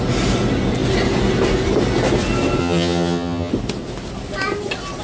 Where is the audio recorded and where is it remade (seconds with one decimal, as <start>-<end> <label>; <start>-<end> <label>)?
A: 0.0-2.6 recorded; 2.6-3.5 remade; 3.5-5.0 recorded